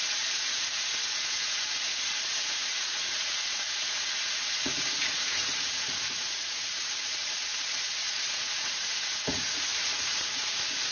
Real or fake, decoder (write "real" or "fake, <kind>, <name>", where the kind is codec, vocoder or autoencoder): fake, vocoder, Vocos